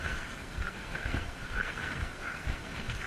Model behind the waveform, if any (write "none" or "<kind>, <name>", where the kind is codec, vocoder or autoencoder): codec, SNAC